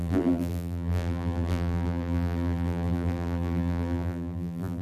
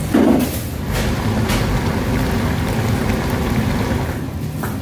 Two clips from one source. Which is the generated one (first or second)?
first